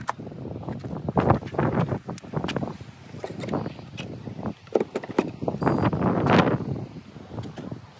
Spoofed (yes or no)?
no